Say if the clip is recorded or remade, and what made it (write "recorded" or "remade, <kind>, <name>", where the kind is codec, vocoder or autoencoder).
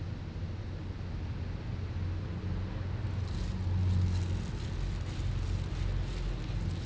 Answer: recorded